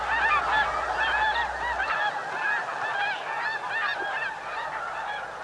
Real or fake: real